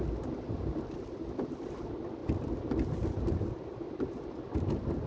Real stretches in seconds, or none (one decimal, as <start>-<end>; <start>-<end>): 0.0-5.1